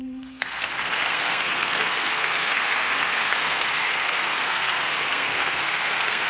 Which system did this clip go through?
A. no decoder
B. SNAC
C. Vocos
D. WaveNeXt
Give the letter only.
B